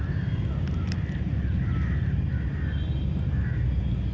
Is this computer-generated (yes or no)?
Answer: no